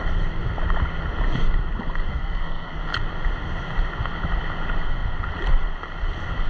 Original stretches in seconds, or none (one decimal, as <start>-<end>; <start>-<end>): 0.0-2.1; 2.8-6.5